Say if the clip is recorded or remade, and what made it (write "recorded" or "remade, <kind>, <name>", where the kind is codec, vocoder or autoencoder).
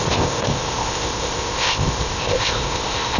remade, codec, ZipCodec